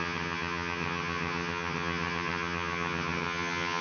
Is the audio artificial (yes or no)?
yes